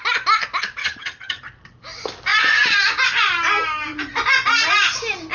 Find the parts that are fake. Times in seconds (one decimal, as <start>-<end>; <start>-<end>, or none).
0.8-1.4